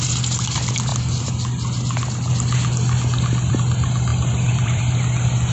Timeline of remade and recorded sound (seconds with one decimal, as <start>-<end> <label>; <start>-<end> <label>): 0.0-4.1 recorded; 4.1-4.8 remade; 4.8-5.5 recorded